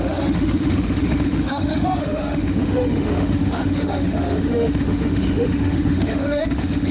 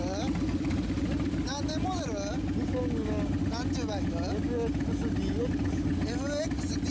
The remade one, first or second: first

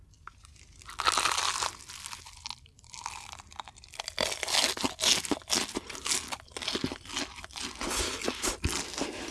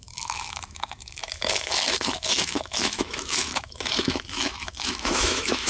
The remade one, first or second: second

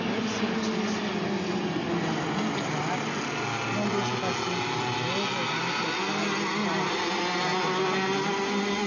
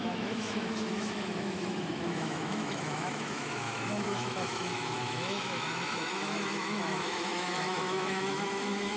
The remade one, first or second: second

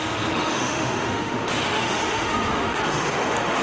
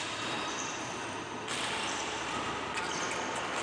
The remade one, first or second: first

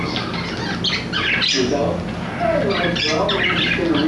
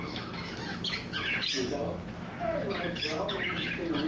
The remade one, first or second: second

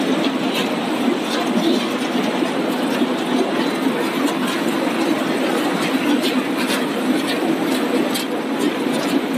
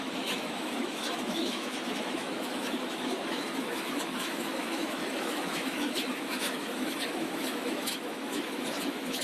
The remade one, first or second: second